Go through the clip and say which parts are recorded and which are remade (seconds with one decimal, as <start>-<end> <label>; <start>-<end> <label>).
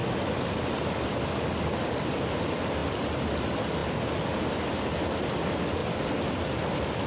0.0-7.1 recorded